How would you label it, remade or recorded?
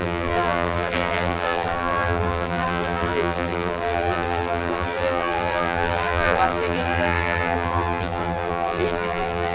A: remade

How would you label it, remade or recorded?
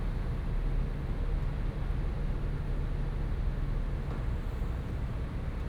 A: recorded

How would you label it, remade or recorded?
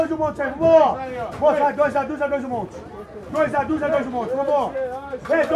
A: recorded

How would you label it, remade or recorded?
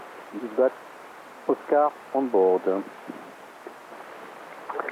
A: recorded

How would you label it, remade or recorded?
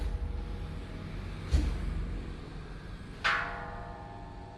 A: recorded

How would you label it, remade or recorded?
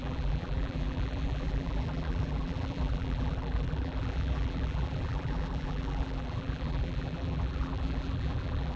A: remade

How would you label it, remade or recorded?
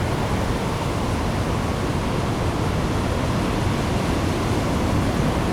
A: recorded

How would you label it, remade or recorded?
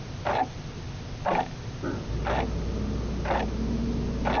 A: recorded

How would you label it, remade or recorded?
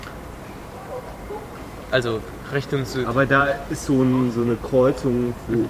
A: remade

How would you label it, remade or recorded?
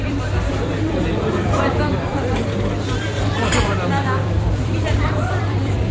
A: remade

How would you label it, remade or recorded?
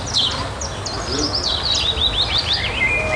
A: recorded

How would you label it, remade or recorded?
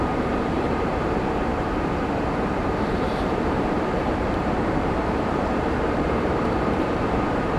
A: remade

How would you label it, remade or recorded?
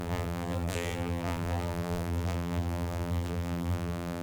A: remade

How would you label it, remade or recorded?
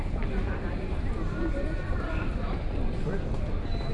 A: remade